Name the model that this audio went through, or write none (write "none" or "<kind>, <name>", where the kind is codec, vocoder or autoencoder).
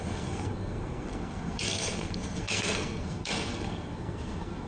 codec, SNAC